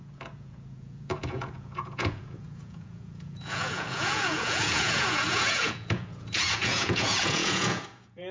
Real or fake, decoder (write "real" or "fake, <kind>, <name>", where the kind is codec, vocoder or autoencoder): fake, vocoder, Vocos